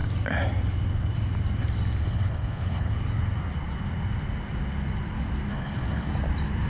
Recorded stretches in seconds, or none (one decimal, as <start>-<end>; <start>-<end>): 0.0-2.0; 2.9-5.5; 6.1-6.7